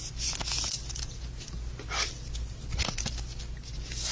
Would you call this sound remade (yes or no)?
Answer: no